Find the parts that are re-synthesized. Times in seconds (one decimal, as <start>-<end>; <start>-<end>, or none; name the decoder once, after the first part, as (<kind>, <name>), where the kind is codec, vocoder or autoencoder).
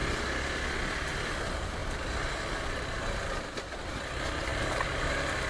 none